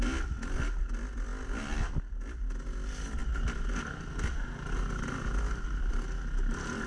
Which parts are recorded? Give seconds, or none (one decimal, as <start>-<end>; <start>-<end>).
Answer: 0.0-6.9